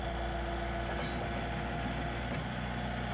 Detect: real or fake real